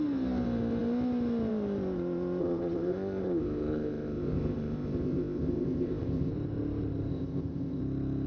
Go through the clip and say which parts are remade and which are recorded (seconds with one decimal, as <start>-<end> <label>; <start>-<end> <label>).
0.0-2.4 recorded; 2.4-6.3 remade; 6.3-7.1 recorded; 7.1-7.8 remade; 7.8-8.3 recorded